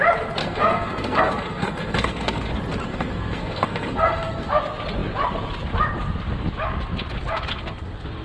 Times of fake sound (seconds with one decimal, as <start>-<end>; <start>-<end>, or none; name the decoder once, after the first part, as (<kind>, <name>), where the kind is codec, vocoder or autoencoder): 0.4-2.5 (codec, SNAC); 2.9-4.5

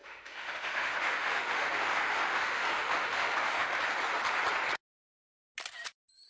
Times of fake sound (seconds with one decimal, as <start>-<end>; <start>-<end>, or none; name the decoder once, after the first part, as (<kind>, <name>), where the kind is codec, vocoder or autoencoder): 0.0-3.8 (autoencoder, DAC-VAE)

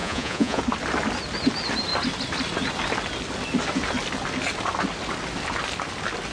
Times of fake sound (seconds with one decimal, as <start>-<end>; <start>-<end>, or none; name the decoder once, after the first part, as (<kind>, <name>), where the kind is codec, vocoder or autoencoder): 0.0-0.6 (vocoder, Vocos)

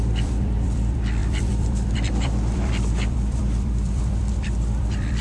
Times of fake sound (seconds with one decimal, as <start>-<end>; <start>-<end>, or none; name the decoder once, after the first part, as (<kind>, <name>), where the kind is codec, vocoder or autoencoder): 0.0-5.2 (vocoder, BigVGAN v2)

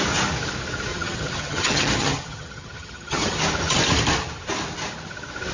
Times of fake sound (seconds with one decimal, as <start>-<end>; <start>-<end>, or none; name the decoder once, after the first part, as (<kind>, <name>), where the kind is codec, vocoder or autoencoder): 0.9-3.4 (vocoder, HiFi-GAN)

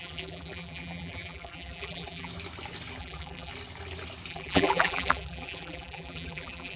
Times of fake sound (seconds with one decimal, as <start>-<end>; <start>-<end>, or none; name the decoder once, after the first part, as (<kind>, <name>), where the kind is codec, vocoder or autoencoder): 0.0-2.3 (vocoder, BigVGAN v2); 3.0-3.5; 4.3-6.8